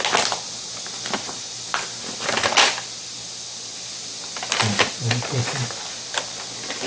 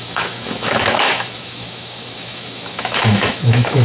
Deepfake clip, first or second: second